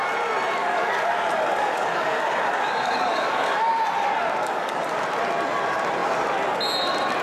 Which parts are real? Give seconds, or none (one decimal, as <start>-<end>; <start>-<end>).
0.0-0.6; 3.7-4.4; 4.9-7.2